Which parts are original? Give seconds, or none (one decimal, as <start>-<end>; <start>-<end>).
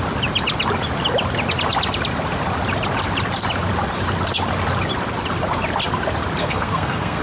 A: 0.0-6.4